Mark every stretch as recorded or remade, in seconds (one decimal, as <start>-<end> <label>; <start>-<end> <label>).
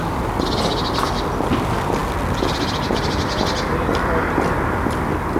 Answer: 0.0-5.4 recorded